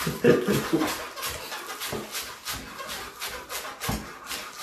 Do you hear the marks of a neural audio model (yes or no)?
no